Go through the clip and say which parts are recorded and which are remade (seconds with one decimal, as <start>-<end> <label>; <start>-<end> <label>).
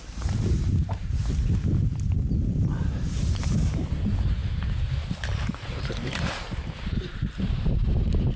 0.0-1.2 remade; 1.2-2.8 recorded; 2.8-8.4 remade